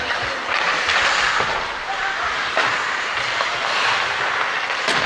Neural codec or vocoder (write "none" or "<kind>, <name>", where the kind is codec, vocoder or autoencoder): none